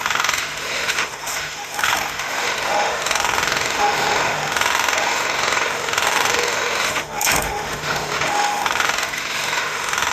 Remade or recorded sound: remade